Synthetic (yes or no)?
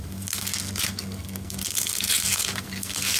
yes